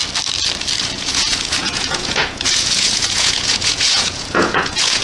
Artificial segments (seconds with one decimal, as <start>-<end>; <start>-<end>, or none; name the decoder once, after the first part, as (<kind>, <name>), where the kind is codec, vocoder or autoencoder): 0.8-5.0 (vocoder, Vocos)